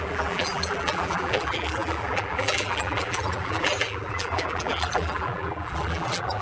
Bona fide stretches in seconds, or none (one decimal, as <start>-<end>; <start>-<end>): none